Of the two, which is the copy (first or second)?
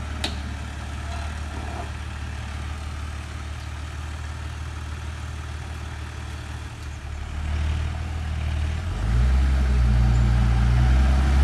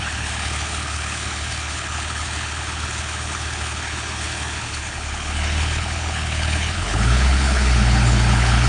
second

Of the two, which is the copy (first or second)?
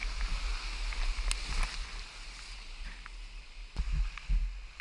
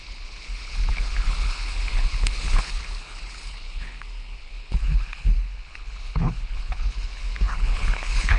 second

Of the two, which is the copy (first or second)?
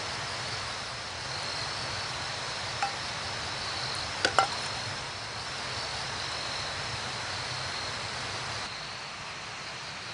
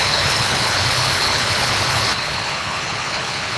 second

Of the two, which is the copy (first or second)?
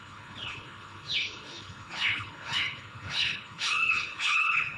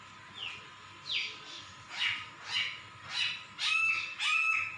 first